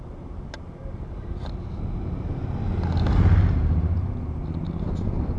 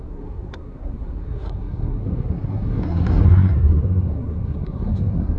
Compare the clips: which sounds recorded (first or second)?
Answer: first